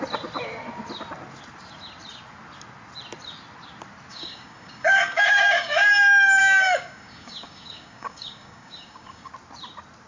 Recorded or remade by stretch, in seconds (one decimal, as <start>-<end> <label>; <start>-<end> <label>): 0.0-4.1 recorded; 4.1-5.9 remade; 5.9-6.4 recorded; 6.4-9.3 remade; 9.3-10.1 recorded